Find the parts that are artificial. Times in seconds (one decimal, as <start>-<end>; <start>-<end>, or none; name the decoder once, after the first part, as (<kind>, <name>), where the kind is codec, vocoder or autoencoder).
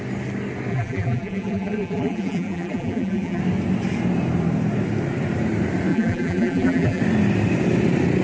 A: 0.7-3.4 (vocoder, BigVGAN v2); 5.9-7.0